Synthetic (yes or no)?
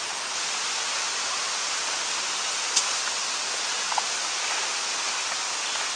no